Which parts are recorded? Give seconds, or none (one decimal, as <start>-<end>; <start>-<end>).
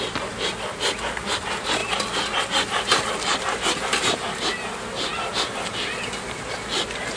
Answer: 0.0-7.2